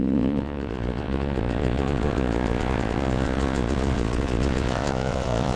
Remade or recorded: remade